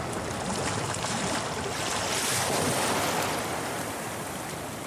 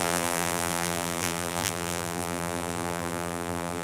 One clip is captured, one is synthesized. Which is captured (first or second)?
first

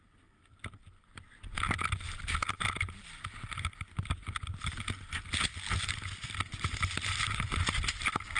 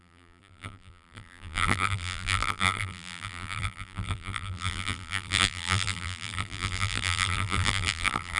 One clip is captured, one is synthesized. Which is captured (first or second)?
first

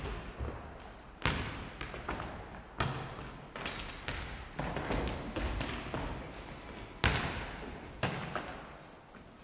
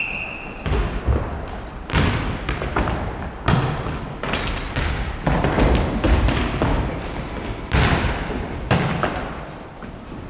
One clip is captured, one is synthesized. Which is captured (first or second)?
first